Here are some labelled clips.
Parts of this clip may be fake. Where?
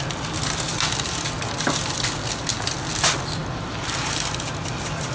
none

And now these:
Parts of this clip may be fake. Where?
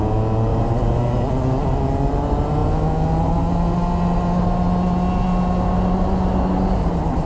0.5-1.3 (vocoder, BigVGAN v2)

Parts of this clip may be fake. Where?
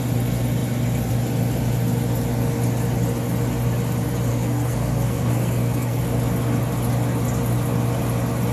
4.3-6.0 (codec, SNAC)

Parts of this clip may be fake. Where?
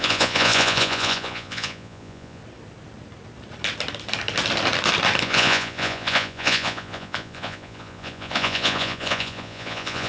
0.0-2.4 (vocoder, Vocos); 5.2-10.1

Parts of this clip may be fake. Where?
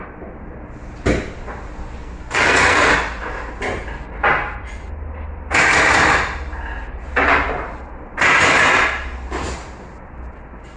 2.0-2.9 (codec, SNAC)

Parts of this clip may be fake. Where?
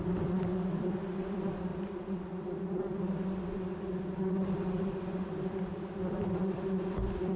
0.0-7.4 (vocoder, BigVGAN v2)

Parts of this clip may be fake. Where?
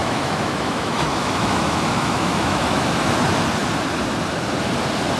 0.0-3.1 (autoencoder, DAC-VAE)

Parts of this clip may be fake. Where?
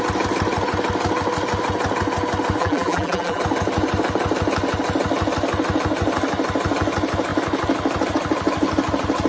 2.6-3.4 (vocoder, BigVGAN v2)